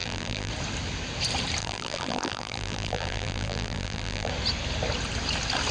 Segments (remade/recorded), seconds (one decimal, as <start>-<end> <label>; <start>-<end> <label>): 0.0-0.5 remade; 0.5-1.6 recorded; 1.6-4.3 remade; 4.3-5.7 recorded